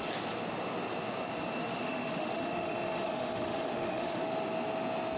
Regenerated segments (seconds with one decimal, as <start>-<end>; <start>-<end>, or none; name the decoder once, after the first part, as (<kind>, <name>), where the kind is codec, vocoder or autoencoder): 1.6-4.2 (autoencoder, DAC-VAE)